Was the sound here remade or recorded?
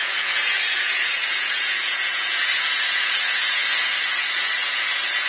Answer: remade